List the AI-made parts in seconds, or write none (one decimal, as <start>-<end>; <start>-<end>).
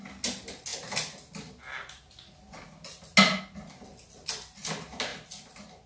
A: none